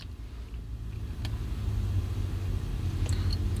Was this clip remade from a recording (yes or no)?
no